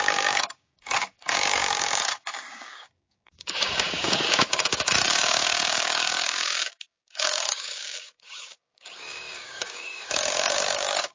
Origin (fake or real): fake